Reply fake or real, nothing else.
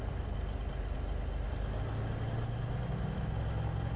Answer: real